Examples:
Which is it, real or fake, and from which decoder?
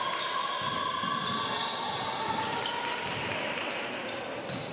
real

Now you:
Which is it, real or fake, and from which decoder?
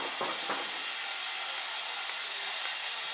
real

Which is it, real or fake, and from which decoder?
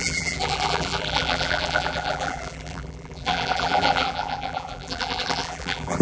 fake, vocoder, BigVGAN v2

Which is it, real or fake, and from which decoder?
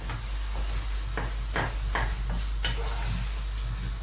real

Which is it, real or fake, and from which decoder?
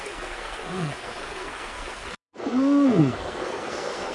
fake, codec, SNAC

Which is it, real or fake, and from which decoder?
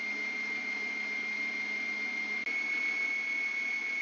real